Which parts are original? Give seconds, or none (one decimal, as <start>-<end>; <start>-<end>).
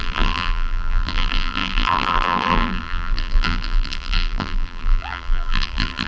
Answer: none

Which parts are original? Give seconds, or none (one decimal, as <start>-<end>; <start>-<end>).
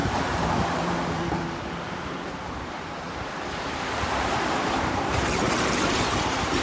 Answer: 1.3-2.4